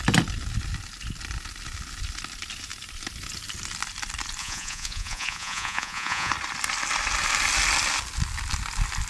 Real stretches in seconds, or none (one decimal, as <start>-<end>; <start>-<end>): 0.0-4.4; 6.3-9.1